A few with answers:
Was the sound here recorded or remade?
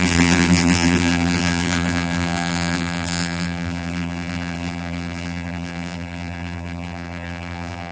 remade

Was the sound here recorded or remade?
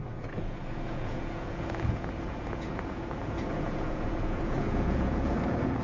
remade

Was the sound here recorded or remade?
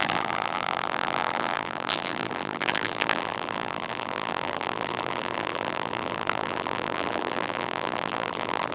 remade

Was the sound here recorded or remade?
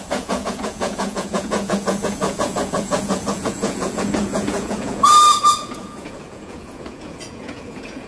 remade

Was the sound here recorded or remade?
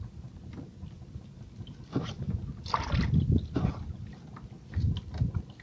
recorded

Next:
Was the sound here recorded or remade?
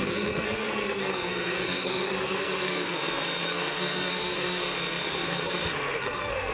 remade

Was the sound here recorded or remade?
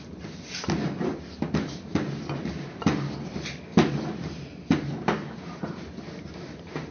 recorded